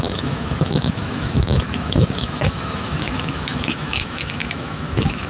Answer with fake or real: fake